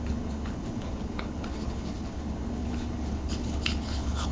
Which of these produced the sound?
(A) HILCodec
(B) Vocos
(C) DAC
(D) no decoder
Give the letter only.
A